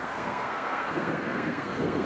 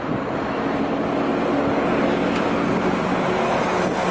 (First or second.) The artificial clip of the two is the first